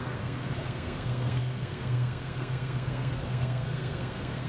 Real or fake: fake